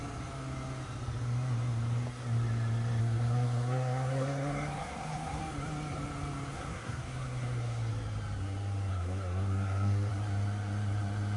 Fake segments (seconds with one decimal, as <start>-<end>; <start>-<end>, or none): 3.0-5.4; 6.5-7.9; 8.9-10.1